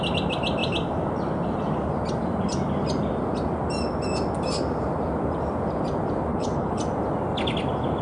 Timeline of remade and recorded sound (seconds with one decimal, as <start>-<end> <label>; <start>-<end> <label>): 0.0-6.3 recorded; 6.3-6.8 remade; 6.8-8.0 recorded